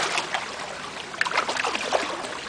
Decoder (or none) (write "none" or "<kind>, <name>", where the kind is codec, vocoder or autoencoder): none